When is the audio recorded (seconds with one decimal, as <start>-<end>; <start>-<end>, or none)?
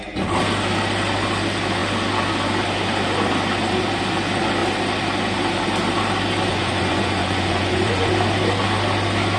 0.0-6.5; 8.1-9.4